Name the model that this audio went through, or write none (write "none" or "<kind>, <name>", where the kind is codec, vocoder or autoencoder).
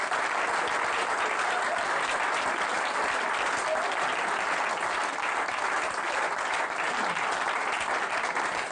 none